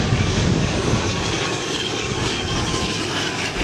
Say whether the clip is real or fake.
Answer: fake